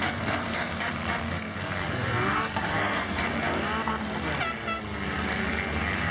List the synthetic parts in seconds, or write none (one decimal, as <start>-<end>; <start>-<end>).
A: 0.0-0.7; 1.2-3.2; 5.5-6.1